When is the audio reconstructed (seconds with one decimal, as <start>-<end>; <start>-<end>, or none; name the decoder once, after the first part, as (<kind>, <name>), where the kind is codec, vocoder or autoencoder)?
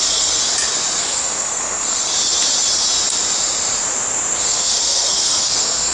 0.0-0.4 (codec, SNAC); 1.0-2.1; 4.4-5.9